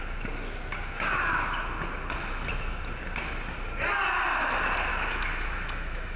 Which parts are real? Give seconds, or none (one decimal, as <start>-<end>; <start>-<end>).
0.0-4.9